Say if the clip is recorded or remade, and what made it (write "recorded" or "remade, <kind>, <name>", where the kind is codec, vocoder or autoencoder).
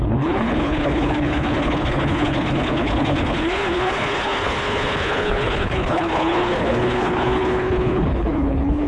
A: remade, codec, HILCodec